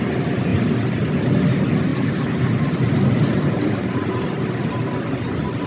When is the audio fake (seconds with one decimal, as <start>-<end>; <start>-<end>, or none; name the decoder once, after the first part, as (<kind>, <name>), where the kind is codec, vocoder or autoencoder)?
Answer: 0.0-0.5 (vocoder, BigVGAN v2); 1.5-5.7